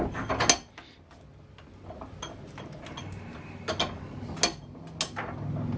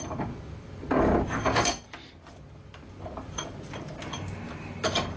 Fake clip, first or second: second